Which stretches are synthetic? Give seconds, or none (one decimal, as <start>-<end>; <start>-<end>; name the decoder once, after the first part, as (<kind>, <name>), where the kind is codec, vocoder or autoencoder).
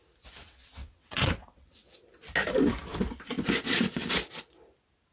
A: 0.4-1.9 (vocoder, WaveNeXt)